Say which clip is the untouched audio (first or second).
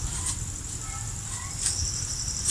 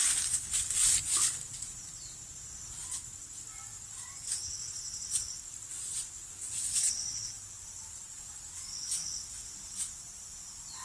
second